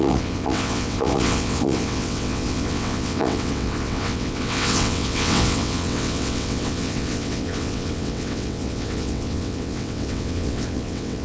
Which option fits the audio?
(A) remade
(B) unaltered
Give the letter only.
A